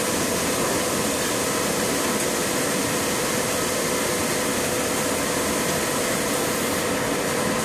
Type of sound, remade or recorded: recorded